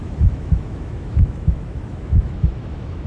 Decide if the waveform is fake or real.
fake